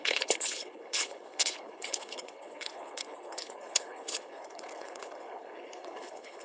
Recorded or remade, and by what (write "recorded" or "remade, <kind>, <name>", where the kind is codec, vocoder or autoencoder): remade, codec, HILCodec